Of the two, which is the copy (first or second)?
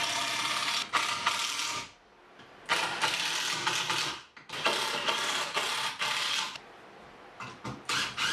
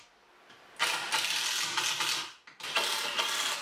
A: first